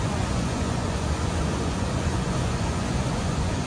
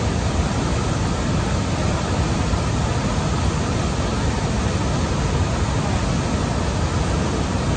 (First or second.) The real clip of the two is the second